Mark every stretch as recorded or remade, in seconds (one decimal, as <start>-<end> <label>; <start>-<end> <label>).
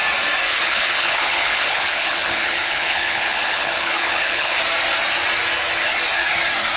0.0-0.5 recorded; 0.5-4.6 remade; 4.6-6.8 recorded